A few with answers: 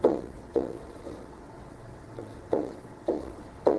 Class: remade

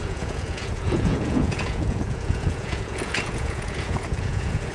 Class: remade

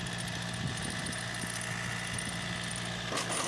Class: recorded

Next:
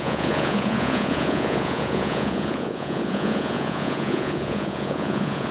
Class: remade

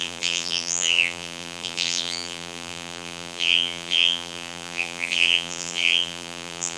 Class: remade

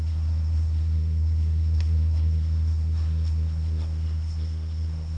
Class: remade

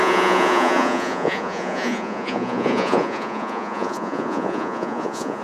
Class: remade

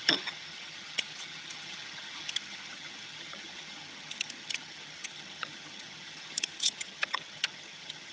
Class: remade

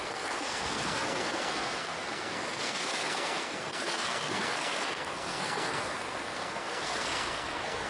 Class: remade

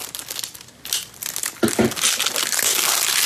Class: recorded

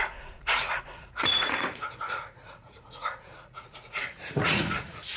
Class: remade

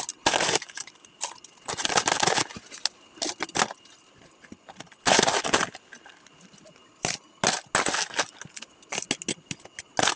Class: recorded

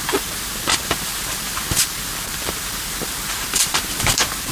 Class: remade